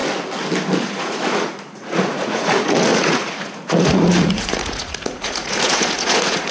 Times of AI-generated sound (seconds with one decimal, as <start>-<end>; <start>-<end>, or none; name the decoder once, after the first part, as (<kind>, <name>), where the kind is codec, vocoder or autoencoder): 0.8-6.5 (vocoder, Vocos)

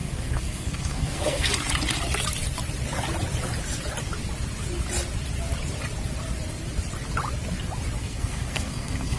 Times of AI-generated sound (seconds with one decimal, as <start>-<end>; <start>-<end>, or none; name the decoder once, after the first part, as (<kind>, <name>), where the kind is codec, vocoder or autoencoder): 0.0-1.5 (codec, SNAC); 8.0-9.2

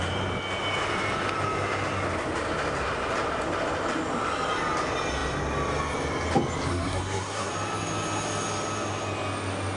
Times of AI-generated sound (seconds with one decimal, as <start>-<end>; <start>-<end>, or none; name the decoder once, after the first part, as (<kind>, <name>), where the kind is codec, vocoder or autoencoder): 6.7-7.5 (codec, SNAC)